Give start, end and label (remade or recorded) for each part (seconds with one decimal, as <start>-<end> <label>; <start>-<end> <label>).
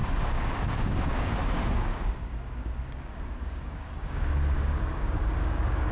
0.0-5.9 remade